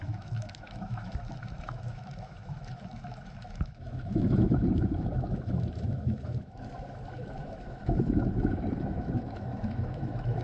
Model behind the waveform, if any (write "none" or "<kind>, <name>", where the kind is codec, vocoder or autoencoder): autoencoder, DAC-VAE